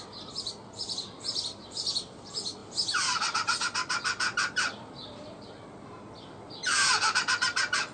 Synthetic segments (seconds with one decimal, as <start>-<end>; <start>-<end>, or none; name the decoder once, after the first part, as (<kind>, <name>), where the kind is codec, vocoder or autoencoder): 0.0-7.9 (vocoder, BigVGAN v2)